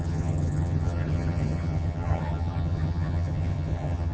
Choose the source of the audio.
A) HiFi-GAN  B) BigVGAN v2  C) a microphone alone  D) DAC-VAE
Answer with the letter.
A